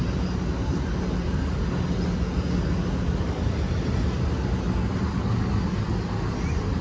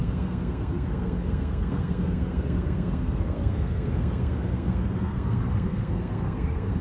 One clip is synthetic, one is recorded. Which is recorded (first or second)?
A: first